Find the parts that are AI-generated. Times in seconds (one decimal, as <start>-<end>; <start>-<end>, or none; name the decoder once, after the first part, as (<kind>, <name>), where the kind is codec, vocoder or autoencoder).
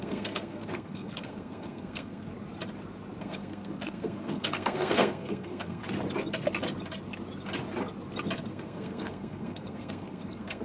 0.0-2.3 (codec, SNAC); 3.2-5.8; 8.5-10.6